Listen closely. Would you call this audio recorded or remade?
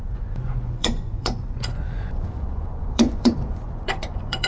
remade